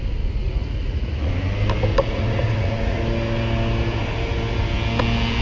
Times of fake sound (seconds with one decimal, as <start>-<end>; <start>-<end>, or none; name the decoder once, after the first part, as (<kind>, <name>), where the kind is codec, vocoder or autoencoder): 0.4-1.3 (vocoder, Vocos); 1.9-3.0